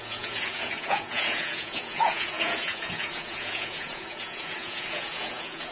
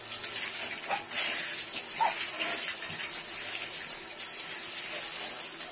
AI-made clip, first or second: first